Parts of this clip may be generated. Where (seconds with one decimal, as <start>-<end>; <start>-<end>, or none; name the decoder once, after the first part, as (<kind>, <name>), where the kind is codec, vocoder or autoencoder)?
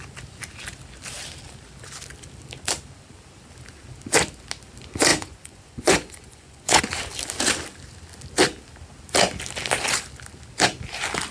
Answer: 5.1-6.8 (vocoder, Vocos)